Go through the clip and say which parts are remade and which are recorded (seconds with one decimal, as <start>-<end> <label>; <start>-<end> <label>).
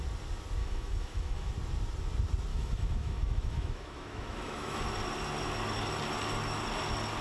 0.0-0.6 recorded; 0.6-1.5 remade; 1.5-2.5 recorded; 2.5-4.8 remade; 4.8-7.2 recorded